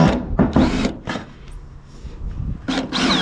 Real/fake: real